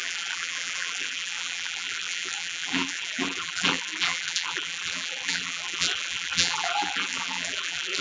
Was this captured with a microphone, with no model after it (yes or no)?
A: no